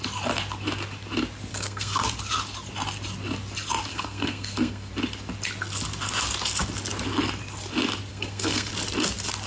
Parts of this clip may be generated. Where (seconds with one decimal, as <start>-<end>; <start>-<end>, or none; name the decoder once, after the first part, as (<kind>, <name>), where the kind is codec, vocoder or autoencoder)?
1.5-2.1 (codec, SNAC); 3.9-4.9; 8.1-8.7